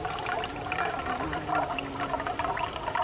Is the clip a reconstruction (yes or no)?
no